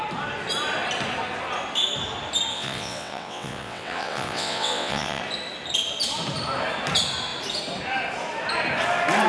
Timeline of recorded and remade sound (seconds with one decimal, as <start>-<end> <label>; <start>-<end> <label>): 0.0-2.5 recorded; 2.5-5.2 remade; 5.2-9.3 recorded